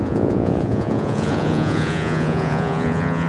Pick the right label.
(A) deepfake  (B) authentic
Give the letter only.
A